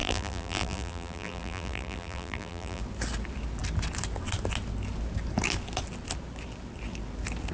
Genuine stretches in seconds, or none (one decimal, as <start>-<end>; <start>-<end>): 2.8-7.5